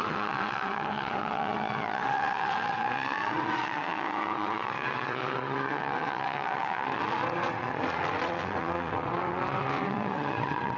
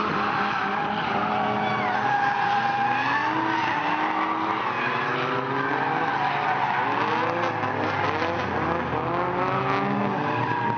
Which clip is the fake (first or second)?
first